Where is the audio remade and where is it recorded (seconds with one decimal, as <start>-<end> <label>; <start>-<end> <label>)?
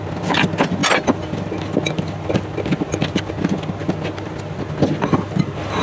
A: 0.0-5.8 recorded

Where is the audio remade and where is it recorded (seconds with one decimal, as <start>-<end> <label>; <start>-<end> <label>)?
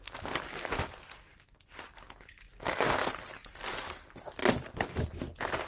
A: 0.0-3.4 recorded; 3.4-4.3 remade; 4.3-5.7 recorded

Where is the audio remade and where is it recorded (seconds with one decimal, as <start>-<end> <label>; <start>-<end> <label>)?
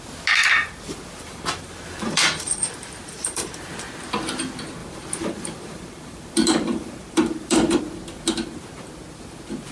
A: 0.0-0.4 recorded; 0.4-3.6 remade; 3.6-4.8 recorded; 4.8-7.8 remade; 7.8-9.7 recorded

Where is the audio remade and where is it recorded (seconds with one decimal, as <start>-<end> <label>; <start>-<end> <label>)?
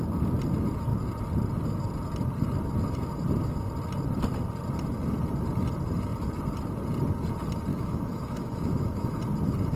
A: 0.0-7.7 recorded; 7.7-9.2 remade; 9.2-9.8 recorded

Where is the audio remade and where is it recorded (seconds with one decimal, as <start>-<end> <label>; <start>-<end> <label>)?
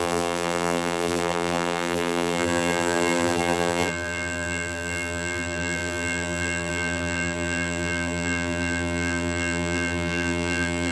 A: 0.0-10.9 remade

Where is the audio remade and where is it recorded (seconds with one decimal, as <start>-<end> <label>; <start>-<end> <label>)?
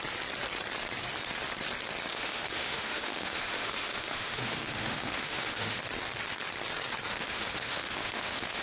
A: 0.0-2.1 recorded; 2.1-5.8 remade; 5.8-7.1 recorded; 7.1-8.6 remade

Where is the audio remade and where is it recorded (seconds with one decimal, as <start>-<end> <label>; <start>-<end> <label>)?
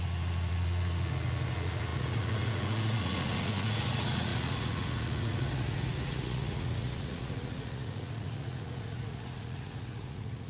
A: 0.0-10.5 remade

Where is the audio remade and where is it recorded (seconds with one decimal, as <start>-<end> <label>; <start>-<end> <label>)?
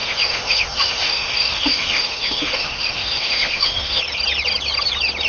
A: 0.0-4.0 remade; 4.0-5.3 recorded